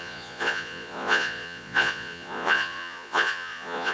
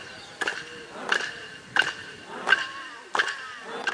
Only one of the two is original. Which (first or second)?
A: second